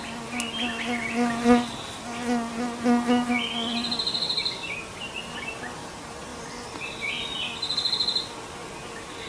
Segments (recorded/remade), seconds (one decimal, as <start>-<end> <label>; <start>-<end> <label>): 0.0-9.3 recorded